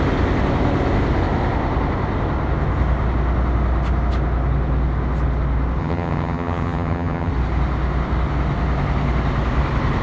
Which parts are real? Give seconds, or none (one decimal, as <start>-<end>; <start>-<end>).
0.0-5.8; 7.3-10.0